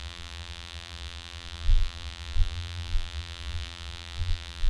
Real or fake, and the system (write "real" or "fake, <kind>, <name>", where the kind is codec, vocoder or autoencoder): fake, vocoder, BigVGAN v2